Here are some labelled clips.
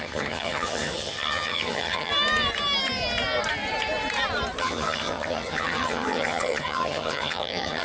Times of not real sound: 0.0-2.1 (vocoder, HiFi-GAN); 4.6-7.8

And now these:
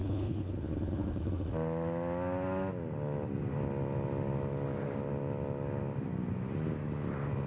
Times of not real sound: 0.0-1.3 (codec, HILCodec)

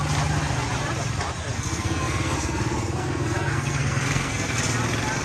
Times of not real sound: 1.5-4.6 (codec, SNAC)

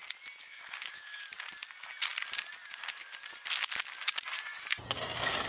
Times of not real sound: 0.4-1.3 (autoencoder, DAC-VAE)

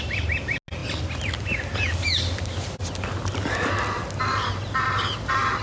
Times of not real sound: none